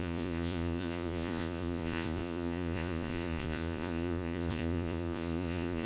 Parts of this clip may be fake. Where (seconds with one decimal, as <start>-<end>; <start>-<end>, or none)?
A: 0.0-5.9